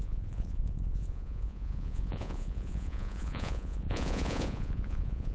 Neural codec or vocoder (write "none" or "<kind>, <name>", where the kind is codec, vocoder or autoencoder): vocoder, Vocos